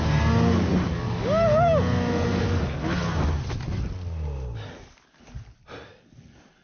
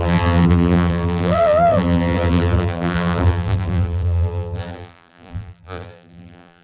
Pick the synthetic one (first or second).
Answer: second